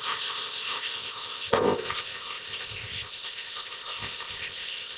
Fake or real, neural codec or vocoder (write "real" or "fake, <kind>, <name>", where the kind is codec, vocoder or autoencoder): fake, codec, ZipCodec